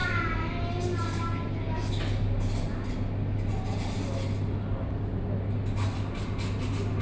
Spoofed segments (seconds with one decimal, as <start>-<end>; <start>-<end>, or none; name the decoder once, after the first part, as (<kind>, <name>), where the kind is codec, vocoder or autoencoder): none